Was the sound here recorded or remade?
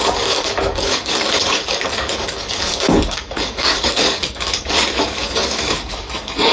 remade